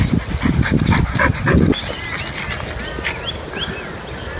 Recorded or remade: recorded